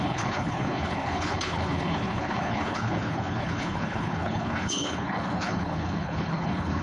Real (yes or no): no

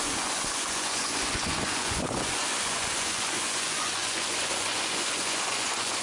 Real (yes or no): no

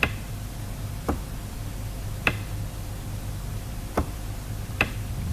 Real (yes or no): no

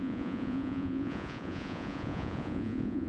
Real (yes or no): no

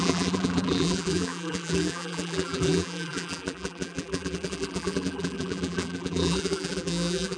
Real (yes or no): no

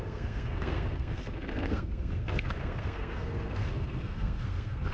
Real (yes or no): no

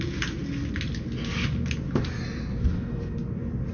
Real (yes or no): yes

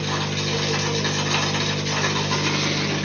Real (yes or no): yes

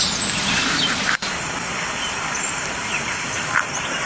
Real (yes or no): yes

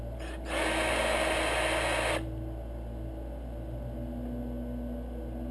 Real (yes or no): yes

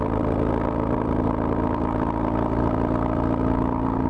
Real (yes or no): yes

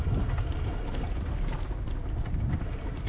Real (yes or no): yes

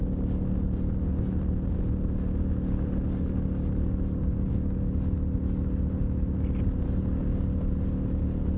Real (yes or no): yes